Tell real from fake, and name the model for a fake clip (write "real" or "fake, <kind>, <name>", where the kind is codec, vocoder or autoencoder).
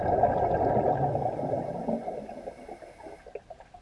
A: real